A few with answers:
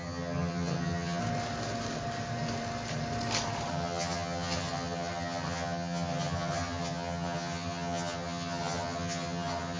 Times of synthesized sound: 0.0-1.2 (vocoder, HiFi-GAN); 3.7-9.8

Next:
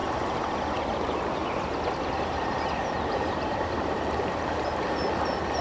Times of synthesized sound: 0.0-0.6 (vocoder, BigVGAN v2); 1.4-4.8

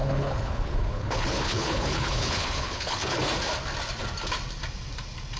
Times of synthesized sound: 0.0-3.2 (codec, HILCodec)

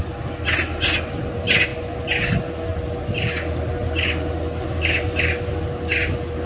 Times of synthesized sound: none

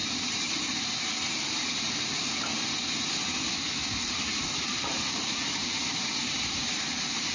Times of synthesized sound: 0.0-2.3 (vocoder, BigVGAN v2); 3.8-7.3

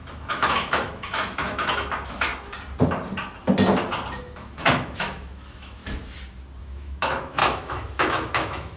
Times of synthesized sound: 0.0-2.3 (autoencoder, DAC-VAE); 4.2-5.8; 6.6-8.8

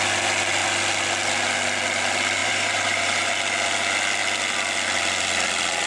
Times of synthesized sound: 2.4-3.3 (vocoder, BigVGAN v2)